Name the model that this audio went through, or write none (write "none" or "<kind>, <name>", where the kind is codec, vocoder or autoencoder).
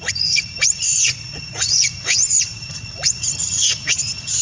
vocoder, Vocos